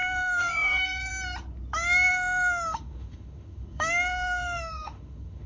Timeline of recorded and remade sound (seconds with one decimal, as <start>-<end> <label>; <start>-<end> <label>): 0.0-1.1 remade; 1.1-2.1 recorded; 2.1-5.5 remade